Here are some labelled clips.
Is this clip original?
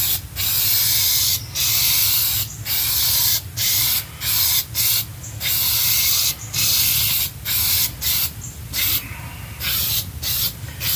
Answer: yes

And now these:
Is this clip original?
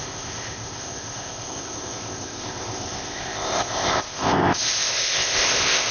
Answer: no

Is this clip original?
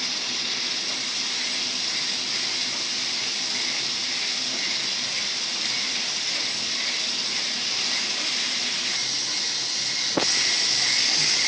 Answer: yes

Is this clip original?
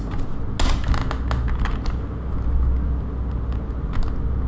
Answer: yes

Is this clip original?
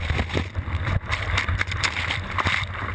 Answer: yes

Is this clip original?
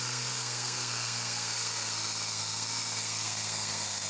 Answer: no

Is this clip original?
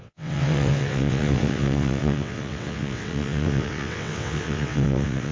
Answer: no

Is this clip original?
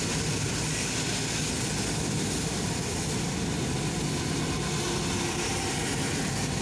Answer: yes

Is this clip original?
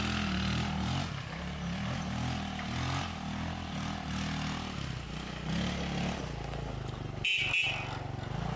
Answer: yes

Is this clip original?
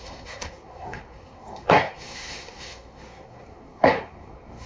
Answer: no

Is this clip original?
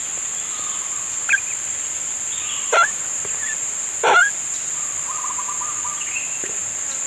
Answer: no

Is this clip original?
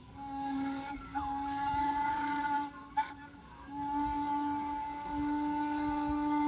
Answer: no